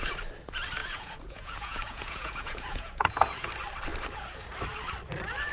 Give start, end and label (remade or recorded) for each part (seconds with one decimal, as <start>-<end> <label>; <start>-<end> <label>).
0.0-0.8 recorded; 0.8-3.5 remade; 3.5-5.5 recorded

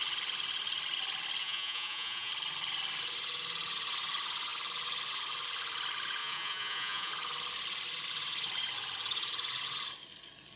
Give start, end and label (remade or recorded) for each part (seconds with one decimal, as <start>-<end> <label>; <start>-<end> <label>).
0.0-1.4 recorded; 1.4-2.3 remade; 2.3-6.2 recorded; 6.2-7.1 remade; 7.1-10.6 recorded

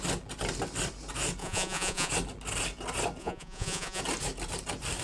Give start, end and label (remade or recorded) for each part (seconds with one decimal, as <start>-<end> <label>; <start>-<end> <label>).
0.0-1.4 recorded; 1.4-2.1 remade; 2.1-3.2 recorded; 3.2-4.0 remade; 4.0-5.0 recorded

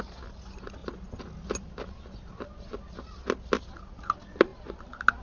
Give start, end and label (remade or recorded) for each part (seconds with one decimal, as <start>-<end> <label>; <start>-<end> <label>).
0.0-5.2 recorded